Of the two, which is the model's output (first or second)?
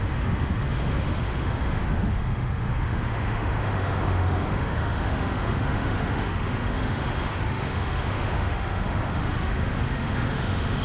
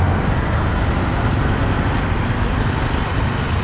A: first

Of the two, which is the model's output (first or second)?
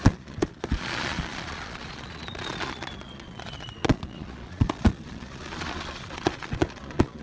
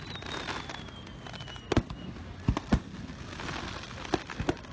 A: first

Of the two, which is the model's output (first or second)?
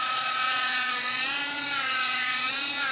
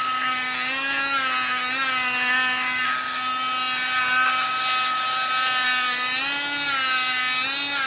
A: first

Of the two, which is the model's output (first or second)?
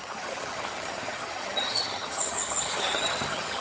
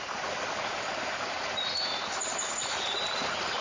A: first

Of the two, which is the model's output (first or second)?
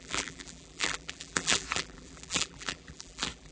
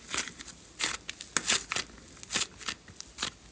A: first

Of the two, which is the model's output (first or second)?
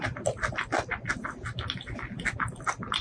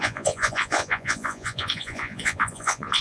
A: second